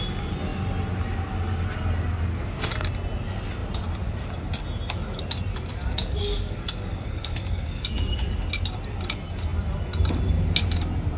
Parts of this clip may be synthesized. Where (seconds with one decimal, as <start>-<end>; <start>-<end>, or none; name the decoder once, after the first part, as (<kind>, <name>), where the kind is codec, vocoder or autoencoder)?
5.5-8.4 (codec, DAC)